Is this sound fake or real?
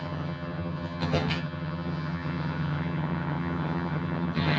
fake